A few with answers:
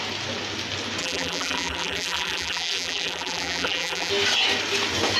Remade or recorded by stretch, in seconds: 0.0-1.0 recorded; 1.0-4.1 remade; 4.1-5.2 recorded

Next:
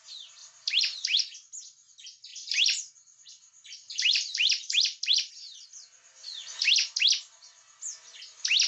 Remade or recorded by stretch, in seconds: 0.0-0.4 recorded; 0.4-1.2 remade; 1.2-2.3 recorded; 2.3-5.3 remade; 5.3-8.7 recorded

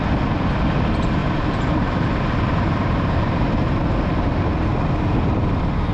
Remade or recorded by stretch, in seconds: 0.0-1.2 recorded; 1.2-3.5 remade; 3.5-5.9 recorded

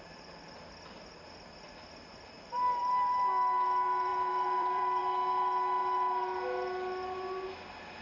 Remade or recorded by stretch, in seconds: 0.0-4.1 recorded; 4.1-5.0 remade; 5.0-8.0 recorded

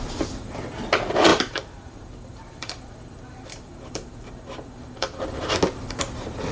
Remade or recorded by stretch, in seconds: 0.0-1.3 recorded; 1.3-5.2 remade; 5.2-6.5 recorded

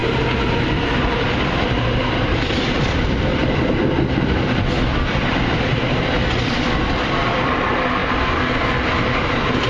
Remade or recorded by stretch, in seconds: 0.0-0.6 recorded; 0.6-3.4 remade; 3.4-4.3 recorded; 4.3-8.0 remade; 8.0-9.7 recorded

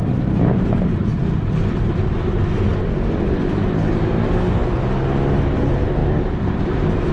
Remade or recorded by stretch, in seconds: 0.0-1.2 remade; 1.2-1.8 recorded; 1.8-2.7 remade; 2.7-5.6 recorded; 5.6-7.1 remade